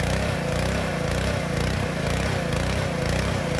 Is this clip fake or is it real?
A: real